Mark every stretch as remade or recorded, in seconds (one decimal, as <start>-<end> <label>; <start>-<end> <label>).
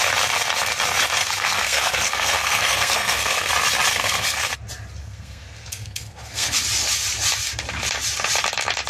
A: 0.0-1.2 recorded; 1.2-3.5 remade; 3.5-3.9 recorded; 3.9-4.5 remade; 4.5-5.0 recorded; 5.0-6.6 remade; 6.6-8.9 recorded